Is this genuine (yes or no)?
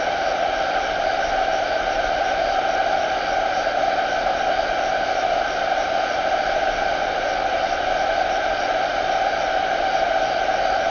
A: yes